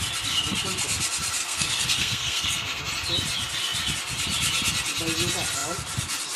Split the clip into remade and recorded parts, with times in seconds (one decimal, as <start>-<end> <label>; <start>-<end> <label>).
0.0-1.4 recorded; 1.4-2.8 remade; 2.8-6.4 recorded